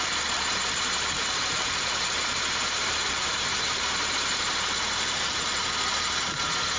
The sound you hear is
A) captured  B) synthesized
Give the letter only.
B